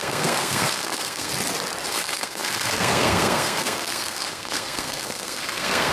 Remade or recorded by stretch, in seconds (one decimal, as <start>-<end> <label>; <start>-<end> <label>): 0.0-1.3 remade; 1.3-1.9 recorded; 1.9-5.9 remade